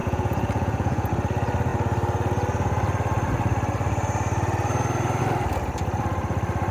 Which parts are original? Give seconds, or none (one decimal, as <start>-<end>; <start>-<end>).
1.1-6.7